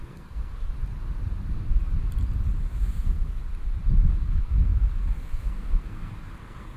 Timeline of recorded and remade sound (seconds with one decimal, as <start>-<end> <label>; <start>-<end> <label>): 0.0-0.7 remade; 0.7-2.8 recorded; 2.8-3.4 remade; 3.4-4.1 recorded; 4.1-6.8 remade

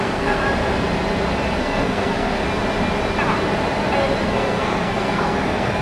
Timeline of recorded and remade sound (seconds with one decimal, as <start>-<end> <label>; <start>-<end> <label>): 0.0-0.4 remade; 0.4-1.6 recorded; 1.6-2.4 remade; 2.4-4.2 recorded; 4.2-5.8 remade

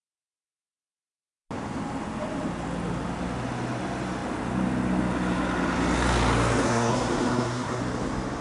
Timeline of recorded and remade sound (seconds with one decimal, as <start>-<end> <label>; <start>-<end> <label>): 0.0-6.6 recorded; 6.6-7.8 remade; 7.8-8.4 recorded

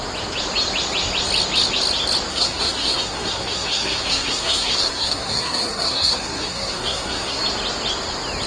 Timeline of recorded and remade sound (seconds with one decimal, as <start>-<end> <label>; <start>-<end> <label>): 0.0-2.3 recorded; 2.3-7.4 remade; 7.4-8.5 recorded